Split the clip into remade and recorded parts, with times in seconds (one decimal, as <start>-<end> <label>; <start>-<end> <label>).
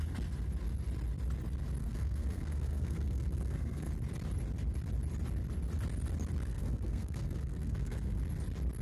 0.0-1.8 recorded; 1.8-3.9 remade; 3.9-6.5 recorded; 6.5-8.2 remade; 8.2-8.8 recorded